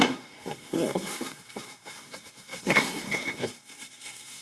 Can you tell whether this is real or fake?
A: fake